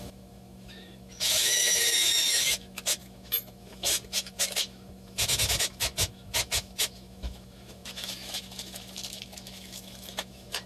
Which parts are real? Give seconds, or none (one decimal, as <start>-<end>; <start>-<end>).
none